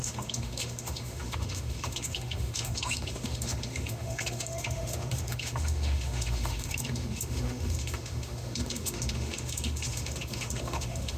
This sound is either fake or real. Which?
fake